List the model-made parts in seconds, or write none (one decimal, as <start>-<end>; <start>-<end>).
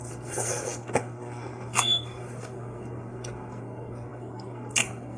0.0-5.2